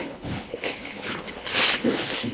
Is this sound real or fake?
fake